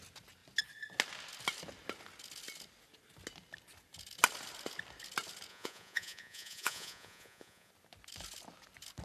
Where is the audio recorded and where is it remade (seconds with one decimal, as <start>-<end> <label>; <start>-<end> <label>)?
0.0-5.5 recorded; 5.5-7.7 remade; 7.7-9.0 recorded